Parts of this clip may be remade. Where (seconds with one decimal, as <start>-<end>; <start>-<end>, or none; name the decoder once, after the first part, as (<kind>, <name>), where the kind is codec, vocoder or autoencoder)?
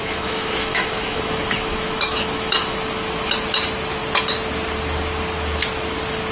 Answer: 0.0-3.3 (autoencoder, DAC-VAE)